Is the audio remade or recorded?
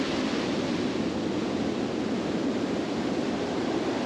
remade